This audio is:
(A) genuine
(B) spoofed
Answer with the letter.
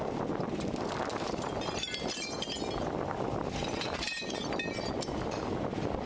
A